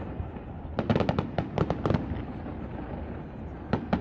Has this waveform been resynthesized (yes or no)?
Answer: no